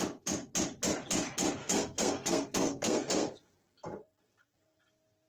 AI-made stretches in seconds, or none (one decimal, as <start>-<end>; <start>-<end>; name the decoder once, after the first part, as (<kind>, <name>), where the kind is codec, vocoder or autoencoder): 1.6-4.8 (codec, SNAC)